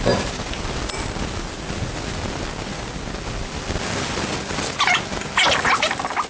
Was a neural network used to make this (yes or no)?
no